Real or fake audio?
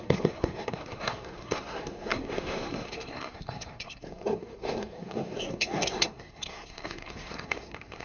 fake